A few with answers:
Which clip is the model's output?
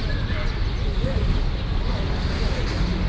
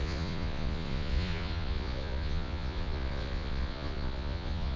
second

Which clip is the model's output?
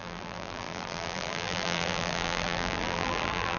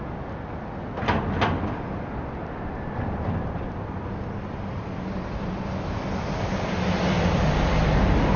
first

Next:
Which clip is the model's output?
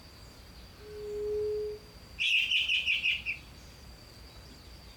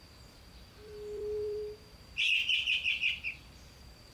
second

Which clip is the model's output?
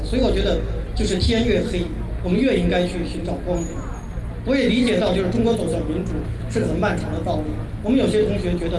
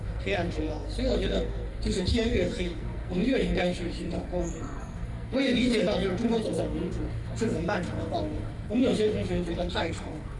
second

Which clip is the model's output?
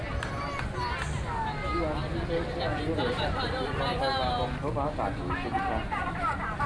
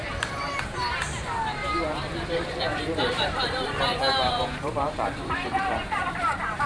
second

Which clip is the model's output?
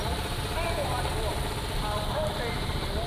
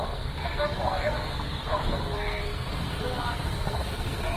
second